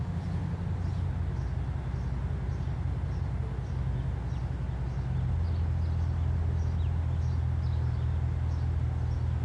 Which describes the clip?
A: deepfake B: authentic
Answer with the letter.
B